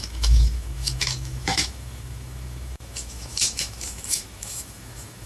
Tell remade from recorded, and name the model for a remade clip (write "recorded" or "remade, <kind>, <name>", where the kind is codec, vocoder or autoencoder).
remade, autoencoder, DAC-VAE